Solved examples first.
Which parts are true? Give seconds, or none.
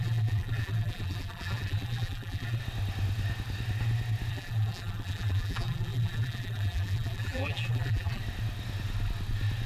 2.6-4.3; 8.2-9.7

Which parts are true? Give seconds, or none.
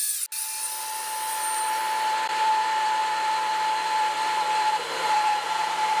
0.0-1.3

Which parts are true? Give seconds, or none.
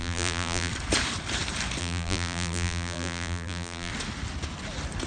0.7-1.8; 3.9-5.1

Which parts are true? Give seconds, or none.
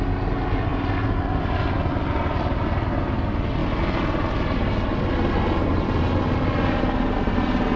0.0-7.8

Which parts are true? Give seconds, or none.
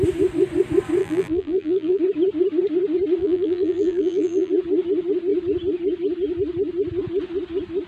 0.0-1.0; 2.0-3.2; 4.5-7.9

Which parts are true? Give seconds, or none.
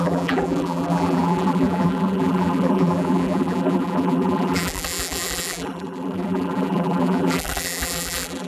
none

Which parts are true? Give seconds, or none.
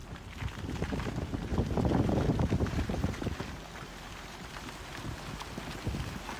1.1-1.5; 5.3-6.4